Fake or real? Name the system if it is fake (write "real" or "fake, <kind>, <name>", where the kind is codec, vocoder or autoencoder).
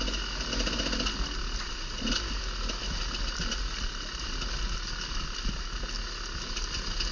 real